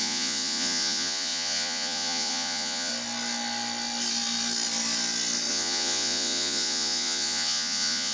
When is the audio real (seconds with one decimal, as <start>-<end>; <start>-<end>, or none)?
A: 2.9-5.5